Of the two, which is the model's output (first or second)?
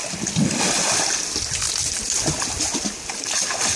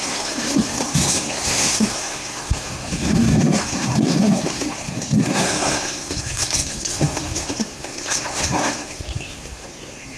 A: second